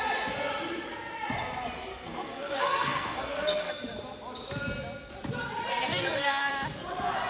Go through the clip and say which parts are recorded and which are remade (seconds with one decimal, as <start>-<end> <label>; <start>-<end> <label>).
0.0-1.9 recorded; 1.9-3.7 remade; 3.7-5.7 recorded; 5.7-6.5 remade; 6.5-7.3 recorded